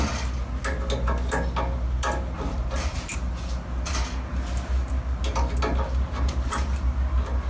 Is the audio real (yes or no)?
yes